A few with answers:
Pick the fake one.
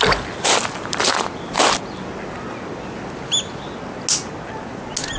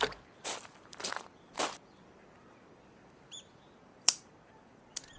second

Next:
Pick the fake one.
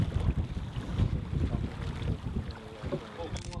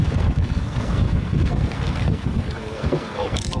second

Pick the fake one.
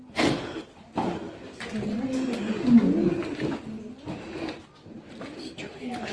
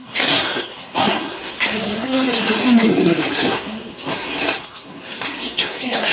second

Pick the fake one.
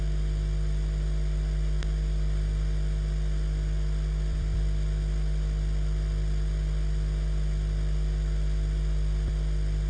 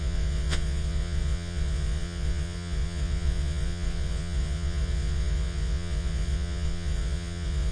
second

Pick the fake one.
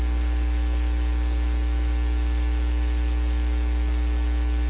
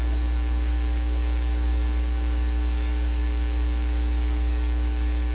second